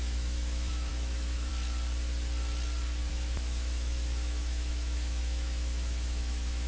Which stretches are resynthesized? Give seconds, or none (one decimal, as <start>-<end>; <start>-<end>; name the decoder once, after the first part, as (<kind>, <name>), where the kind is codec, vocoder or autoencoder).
0.0-1.5 (autoencoder, DAC-VAE); 3.1-6.7

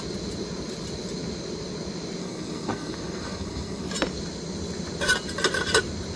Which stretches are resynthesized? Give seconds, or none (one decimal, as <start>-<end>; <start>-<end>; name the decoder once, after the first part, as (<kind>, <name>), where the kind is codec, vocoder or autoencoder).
2.2-3.9 (codec, SNAC)

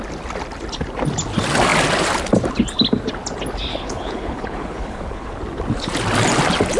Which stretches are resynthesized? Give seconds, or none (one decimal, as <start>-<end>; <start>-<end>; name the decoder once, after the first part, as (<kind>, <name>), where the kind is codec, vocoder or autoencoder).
3.7-5.4 (codec, HILCodec)

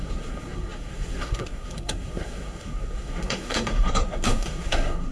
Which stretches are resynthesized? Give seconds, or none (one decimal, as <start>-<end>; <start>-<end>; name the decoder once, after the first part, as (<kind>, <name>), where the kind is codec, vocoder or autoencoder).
0.0-5.1 (codec, SNAC)

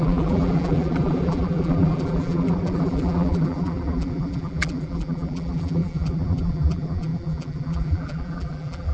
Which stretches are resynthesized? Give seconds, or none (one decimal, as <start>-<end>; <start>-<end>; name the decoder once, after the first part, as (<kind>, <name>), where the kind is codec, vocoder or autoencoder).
0.0-8.9 (vocoder, BigVGAN v2)

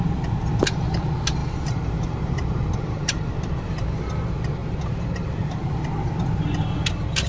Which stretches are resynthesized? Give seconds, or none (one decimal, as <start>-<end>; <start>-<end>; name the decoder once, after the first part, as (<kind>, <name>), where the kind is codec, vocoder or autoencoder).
1.4-4.1 (vocoder, BigVGAN v2); 4.6-5.8

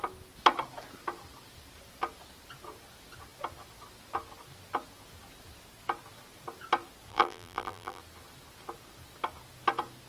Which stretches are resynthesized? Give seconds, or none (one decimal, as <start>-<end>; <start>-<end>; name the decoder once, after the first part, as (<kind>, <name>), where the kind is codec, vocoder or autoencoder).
7.1-8.0 (vocoder, BigVGAN v2)

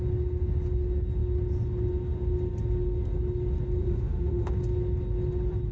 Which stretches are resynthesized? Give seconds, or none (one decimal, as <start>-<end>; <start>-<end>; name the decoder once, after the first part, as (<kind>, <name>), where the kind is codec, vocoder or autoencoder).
3.8-4.5 (autoencoder, DAC-VAE)